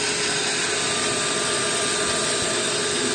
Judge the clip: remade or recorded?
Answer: recorded